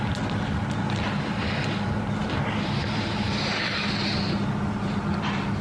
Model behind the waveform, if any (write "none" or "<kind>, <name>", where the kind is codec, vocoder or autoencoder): none